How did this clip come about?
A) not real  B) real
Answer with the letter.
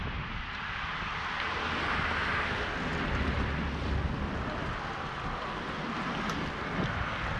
B